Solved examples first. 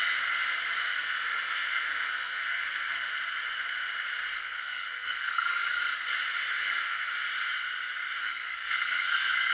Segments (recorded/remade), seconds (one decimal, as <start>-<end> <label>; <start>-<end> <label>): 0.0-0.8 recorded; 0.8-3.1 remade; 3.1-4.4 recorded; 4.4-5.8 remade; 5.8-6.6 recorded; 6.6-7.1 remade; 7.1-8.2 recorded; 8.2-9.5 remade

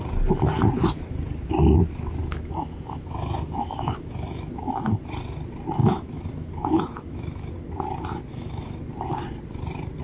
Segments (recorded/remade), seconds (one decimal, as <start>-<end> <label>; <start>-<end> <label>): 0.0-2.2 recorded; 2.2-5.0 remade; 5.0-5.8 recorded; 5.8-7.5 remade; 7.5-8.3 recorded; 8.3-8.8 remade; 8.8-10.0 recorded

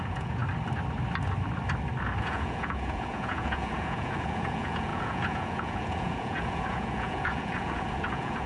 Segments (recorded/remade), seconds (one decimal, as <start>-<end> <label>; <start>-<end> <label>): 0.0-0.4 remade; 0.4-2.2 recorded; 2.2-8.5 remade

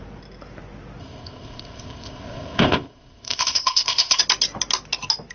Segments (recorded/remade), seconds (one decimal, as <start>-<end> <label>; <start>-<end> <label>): 0.0-1.0 recorded; 1.0-4.2 remade; 4.2-5.3 recorded